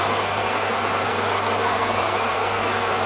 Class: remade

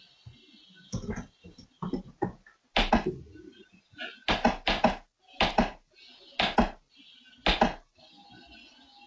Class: recorded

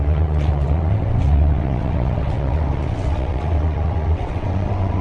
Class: remade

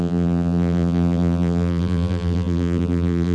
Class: remade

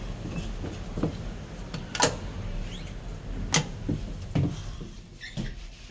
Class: recorded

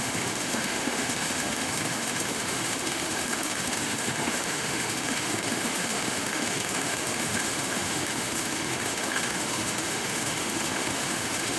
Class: remade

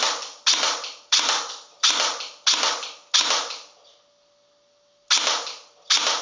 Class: recorded